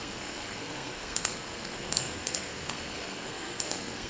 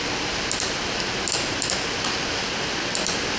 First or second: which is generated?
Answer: first